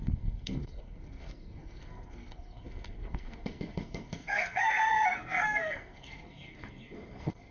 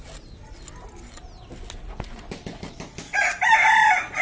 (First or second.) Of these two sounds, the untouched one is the second